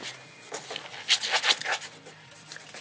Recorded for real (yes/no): yes